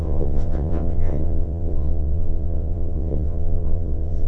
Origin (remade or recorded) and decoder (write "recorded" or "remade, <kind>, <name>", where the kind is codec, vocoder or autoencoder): remade, vocoder, WaveNeXt